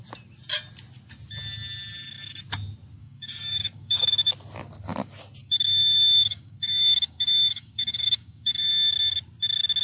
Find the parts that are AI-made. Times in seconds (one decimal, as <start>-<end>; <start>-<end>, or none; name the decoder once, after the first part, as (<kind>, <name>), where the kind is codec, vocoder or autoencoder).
3.0-4.0 (codec, DAC); 5.4-8.7